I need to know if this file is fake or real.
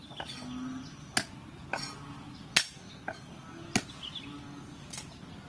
real